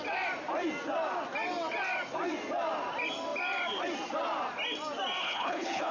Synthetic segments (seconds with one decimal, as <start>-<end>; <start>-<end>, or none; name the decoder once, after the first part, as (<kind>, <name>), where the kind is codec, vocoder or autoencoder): 5.2-5.9 (codec, HILCodec)